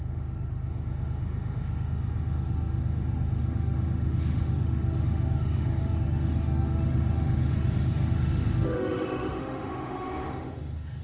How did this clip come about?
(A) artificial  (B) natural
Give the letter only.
A